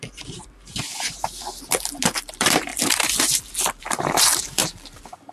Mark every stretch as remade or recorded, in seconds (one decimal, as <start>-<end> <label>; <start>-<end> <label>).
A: 0.0-2.7 remade; 2.7-3.8 recorded; 3.8-4.6 remade; 4.6-5.3 recorded